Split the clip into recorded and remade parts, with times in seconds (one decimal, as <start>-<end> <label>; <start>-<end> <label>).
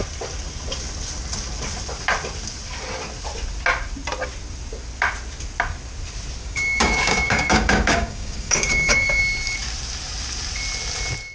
0.0-6.4 recorded; 6.4-9.2 remade; 9.2-11.3 recorded